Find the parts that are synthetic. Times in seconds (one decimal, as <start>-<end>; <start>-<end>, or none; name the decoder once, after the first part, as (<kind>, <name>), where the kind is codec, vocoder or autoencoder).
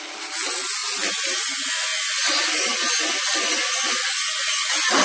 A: none